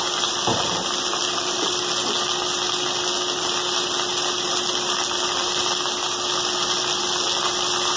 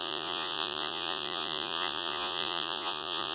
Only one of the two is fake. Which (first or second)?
second